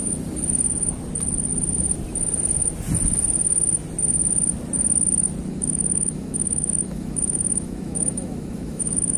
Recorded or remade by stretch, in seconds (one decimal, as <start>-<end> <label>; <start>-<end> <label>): 0.0-5.5 recorded; 5.5-9.2 remade